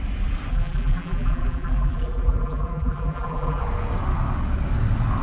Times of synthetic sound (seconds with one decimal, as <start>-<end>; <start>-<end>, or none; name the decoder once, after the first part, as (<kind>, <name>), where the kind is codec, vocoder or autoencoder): 0.5-3.6 (vocoder, BigVGAN v2)